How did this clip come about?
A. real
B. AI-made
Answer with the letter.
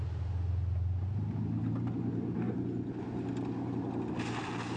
A